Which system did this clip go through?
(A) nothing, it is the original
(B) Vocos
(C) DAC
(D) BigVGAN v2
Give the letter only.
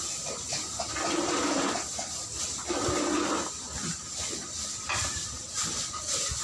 A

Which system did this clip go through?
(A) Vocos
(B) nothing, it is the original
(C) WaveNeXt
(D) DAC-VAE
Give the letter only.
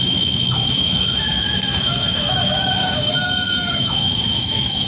D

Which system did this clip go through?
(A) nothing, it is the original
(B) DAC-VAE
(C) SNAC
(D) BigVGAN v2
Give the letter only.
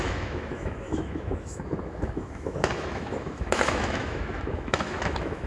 B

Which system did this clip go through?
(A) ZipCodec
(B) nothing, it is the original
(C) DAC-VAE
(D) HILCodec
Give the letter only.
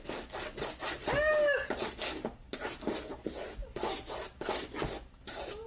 B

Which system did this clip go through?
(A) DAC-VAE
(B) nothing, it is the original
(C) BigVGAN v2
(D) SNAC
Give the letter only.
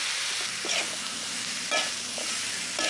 B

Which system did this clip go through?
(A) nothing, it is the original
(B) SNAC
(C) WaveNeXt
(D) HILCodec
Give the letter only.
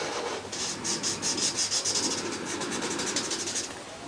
A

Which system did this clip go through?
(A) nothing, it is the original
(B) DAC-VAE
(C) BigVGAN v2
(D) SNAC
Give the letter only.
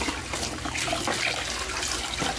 A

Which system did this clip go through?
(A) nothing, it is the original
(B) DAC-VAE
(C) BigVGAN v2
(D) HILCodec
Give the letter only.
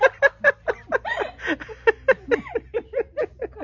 A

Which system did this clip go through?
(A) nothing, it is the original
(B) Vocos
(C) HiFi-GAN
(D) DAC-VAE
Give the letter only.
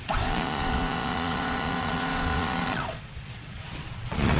B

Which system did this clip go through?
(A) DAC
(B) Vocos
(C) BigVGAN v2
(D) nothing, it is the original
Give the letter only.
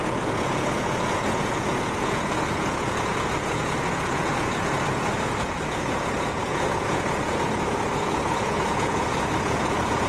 B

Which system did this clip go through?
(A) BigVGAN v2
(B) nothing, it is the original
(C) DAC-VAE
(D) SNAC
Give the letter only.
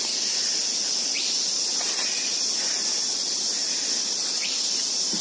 B